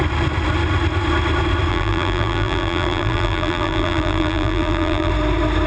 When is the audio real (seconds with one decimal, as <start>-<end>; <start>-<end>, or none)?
0.0-1.7; 5.1-5.7